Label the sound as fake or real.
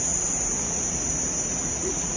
fake